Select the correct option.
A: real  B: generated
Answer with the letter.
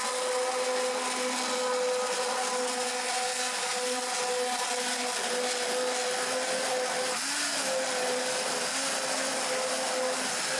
A